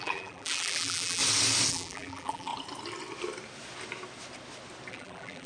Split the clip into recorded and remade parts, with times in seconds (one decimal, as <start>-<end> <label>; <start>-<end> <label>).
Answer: 0.0-1.2 remade; 1.2-1.7 recorded; 1.7-2.5 remade; 2.5-4.9 recorded; 4.9-5.5 remade